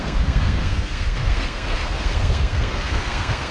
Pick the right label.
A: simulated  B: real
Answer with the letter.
A